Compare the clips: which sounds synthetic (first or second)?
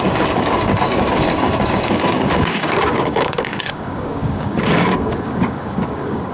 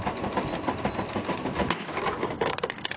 first